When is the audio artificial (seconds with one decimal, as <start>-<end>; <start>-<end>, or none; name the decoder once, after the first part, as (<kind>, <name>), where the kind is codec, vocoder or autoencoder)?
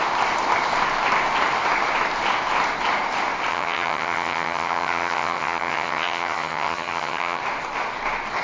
3.5-7.4 (vocoder, HiFi-GAN)